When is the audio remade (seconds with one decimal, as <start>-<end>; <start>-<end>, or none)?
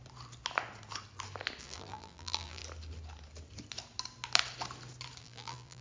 1.6-2.6; 5.2-5.8